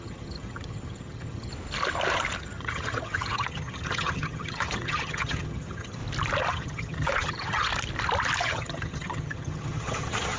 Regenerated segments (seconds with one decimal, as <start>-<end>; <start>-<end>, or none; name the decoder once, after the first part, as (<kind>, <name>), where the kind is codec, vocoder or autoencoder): 0.0-1.5 (vocoder, HiFi-GAN); 2.4-6.0; 6.5-7.7; 8.4-10.4